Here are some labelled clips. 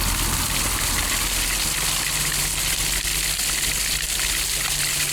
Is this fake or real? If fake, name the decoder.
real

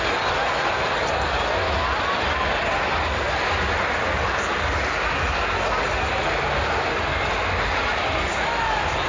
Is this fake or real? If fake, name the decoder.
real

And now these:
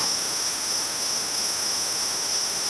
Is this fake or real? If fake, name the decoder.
fake, autoencoder, DAC-VAE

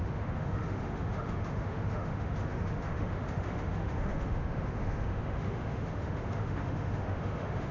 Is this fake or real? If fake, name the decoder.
fake, autoencoder, DAC-VAE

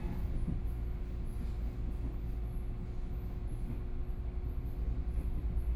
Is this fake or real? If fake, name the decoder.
real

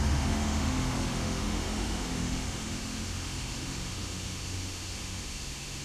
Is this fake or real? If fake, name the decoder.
fake, autoencoder, DAC-VAE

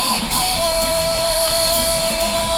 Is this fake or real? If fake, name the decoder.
fake, autoencoder, DAC-VAE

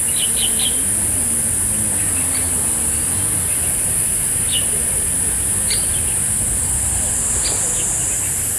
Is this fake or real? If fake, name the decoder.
real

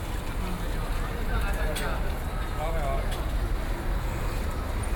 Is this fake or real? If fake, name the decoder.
real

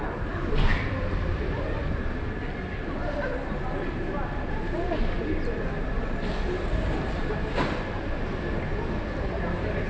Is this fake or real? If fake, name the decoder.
real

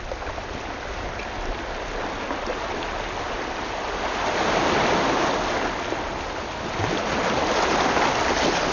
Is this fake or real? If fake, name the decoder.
real